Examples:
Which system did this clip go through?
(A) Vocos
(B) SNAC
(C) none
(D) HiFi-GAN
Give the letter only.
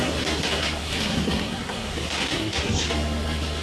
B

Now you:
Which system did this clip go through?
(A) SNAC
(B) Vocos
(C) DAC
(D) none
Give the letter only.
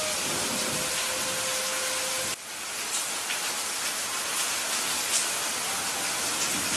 D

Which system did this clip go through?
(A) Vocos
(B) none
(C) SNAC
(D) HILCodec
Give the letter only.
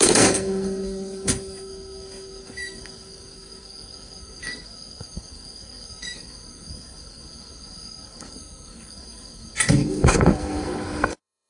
C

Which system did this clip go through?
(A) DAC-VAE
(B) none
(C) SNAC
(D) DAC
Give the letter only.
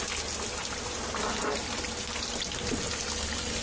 B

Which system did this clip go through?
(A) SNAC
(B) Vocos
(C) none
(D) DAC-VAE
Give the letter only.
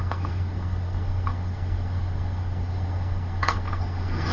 A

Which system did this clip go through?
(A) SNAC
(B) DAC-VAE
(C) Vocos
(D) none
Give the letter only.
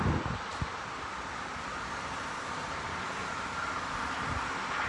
D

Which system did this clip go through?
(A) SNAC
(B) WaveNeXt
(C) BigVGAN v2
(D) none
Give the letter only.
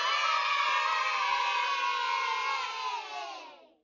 D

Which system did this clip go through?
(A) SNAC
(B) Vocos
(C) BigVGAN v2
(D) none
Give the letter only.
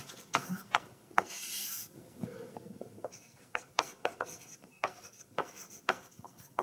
A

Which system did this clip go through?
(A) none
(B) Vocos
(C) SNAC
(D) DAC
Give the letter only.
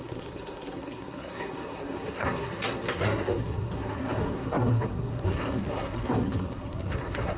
C